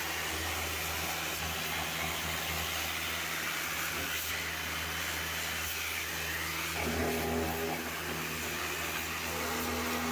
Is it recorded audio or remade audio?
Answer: recorded